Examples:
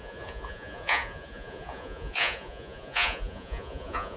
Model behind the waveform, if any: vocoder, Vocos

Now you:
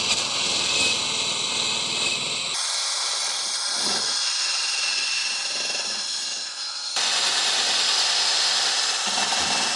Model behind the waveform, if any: none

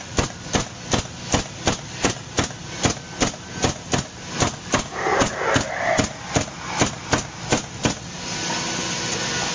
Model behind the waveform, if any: none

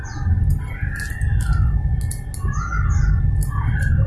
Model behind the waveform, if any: none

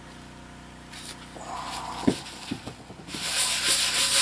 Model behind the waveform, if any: none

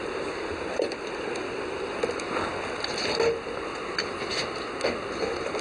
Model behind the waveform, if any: none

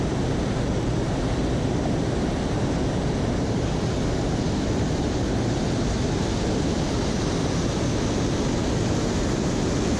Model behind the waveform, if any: none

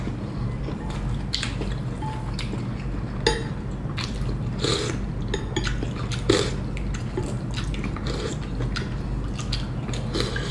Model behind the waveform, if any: none